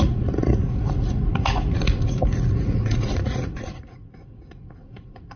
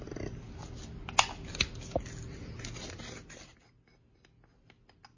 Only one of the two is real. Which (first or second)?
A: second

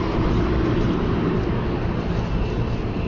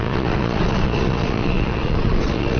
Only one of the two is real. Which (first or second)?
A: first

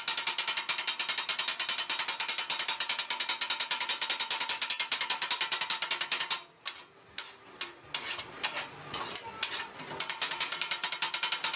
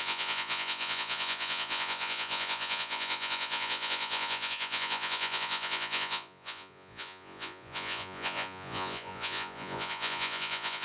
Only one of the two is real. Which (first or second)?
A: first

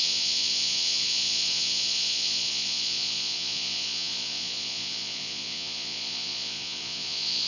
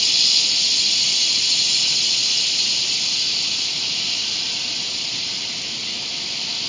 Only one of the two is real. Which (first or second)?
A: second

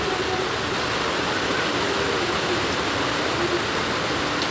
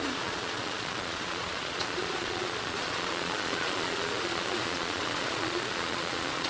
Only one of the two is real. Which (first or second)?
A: first